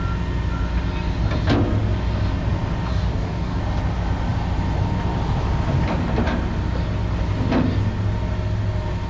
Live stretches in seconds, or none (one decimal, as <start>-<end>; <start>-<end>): 0.0-2.9; 3.6-9.1